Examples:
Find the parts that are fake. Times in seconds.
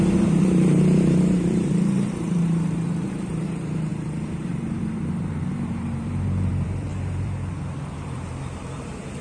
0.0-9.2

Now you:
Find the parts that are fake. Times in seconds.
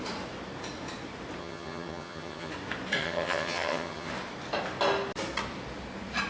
1.4-2.5; 3.0-4.1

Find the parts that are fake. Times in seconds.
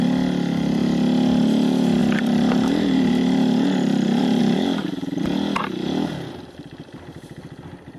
2.0-4.4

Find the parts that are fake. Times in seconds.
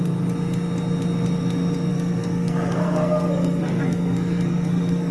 1.9-5.1